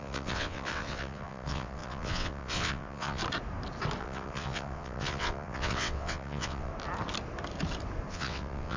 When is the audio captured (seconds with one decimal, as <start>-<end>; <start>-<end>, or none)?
3.2-4.0; 6.7-8.1